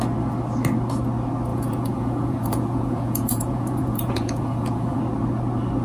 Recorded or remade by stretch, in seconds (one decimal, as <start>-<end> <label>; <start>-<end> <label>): 0.0-1.5 recorded; 1.5-5.0 remade; 5.0-5.8 recorded